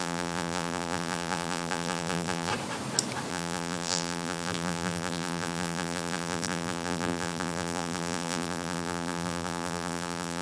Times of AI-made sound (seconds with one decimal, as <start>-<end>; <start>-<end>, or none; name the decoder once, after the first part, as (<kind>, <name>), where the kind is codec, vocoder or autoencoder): 0.0-2.5 (vocoder, BigVGAN v2); 3.3-10.4